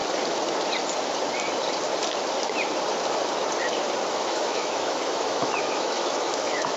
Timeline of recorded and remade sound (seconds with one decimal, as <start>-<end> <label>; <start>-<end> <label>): 0.0-4.1 recorded; 4.1-6.8 remade